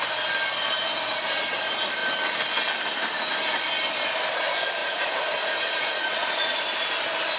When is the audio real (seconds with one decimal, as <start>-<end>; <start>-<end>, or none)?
0.0-4.8; 6.6-7.4